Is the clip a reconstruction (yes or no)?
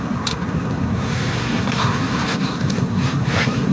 yes